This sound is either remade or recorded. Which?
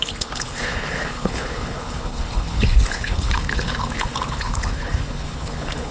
remade